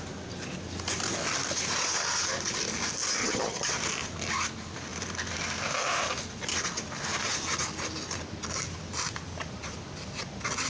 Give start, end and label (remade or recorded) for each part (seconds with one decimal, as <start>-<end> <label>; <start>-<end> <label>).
0.0-3.2 recorded; 3.2-3.7 remade; 3.7-10.7 recorded